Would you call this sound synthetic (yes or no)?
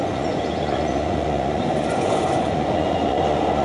yes